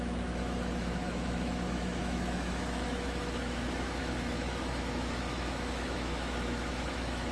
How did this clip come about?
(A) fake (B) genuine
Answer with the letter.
A